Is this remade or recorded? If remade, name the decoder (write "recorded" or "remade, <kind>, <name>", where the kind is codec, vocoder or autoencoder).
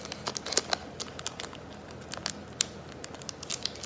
recorded